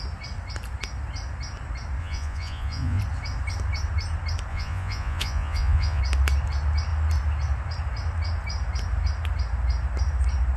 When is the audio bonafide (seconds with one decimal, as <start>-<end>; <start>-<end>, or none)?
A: 0.0-2.0; 3.0-4.5; 6.0-10.6